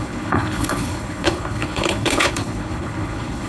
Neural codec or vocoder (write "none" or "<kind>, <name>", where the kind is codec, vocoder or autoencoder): codec, HILCodec